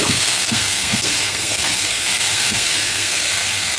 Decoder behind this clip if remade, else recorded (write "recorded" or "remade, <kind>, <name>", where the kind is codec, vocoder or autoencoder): remade, codec, SNAC